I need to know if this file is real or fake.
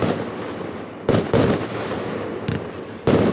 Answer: real